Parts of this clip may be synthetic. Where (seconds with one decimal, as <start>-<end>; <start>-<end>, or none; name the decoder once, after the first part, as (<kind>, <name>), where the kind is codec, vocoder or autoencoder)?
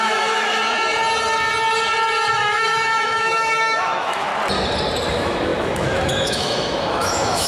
0.0-0.6 (autoencoder, DAC-VAE); 2.3-4.3; 5.1-7.5